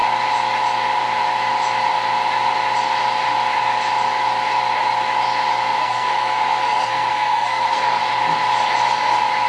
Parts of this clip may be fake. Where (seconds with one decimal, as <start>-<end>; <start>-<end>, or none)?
5.8-8.0